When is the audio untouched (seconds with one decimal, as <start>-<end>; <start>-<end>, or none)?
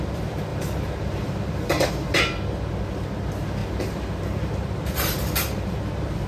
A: 0.0-0.5; 1.9-3.6; 5.8-6.3